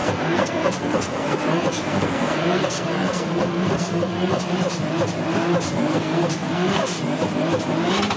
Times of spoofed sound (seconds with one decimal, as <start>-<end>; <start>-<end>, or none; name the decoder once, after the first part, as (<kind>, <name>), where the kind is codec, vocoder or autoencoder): 0.0-4.4 (codec, SNAC); 5.8-6.8

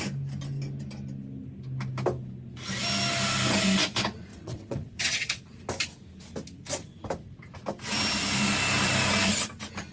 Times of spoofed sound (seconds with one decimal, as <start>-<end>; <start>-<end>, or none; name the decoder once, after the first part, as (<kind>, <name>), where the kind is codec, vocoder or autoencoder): 4.3-5.4 (vocoder, WaveNeXt)

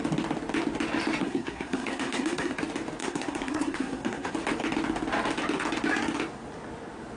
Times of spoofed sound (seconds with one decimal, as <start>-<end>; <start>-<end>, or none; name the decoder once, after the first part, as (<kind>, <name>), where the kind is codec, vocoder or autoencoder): 1.2-2.6 (codec, SNAC); 3.0-4.3

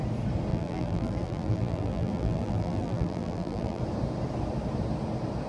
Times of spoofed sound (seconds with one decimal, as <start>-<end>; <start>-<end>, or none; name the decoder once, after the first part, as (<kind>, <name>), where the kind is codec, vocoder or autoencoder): 0.5-3.8 (vocoder, BigVGAN v2)